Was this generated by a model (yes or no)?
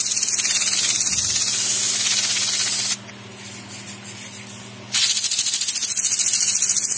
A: no